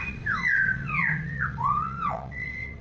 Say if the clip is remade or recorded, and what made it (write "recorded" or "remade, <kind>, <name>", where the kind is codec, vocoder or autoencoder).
remade, vocoder, WaveNeXt